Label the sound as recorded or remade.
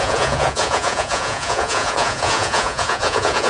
remade